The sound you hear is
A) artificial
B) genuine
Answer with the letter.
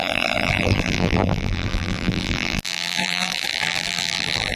A